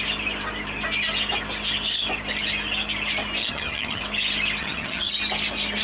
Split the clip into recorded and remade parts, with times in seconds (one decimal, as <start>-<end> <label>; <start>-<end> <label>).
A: 0.0-3.4 recorded; 3.4-4.0 remade; 4.0-4.6 recorded; 4.6-5.1 remade; 5.1-5.8 recorded